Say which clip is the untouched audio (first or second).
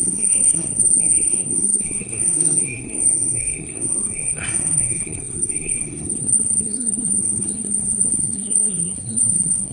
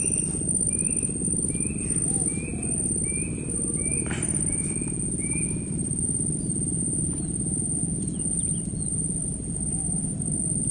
second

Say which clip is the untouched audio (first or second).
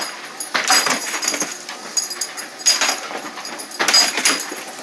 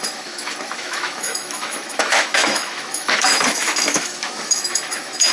first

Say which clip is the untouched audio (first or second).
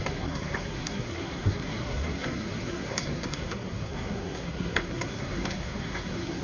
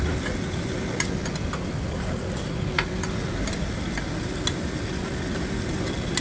second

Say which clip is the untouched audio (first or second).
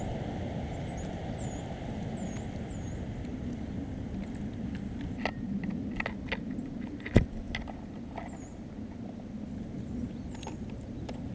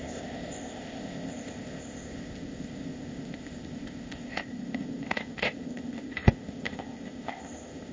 first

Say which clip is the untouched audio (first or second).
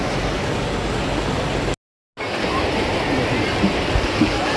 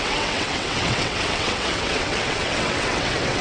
first